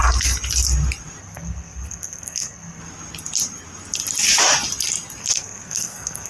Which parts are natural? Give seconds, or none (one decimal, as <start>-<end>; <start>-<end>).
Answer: 0.0-1.2; 2.8-5.2